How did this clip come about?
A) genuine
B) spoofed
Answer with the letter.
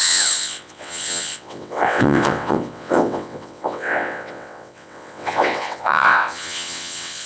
B